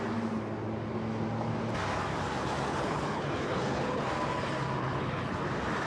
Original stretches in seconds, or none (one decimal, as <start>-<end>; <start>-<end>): 0.0-2.7; 4.1-4.8; 5.4-5.9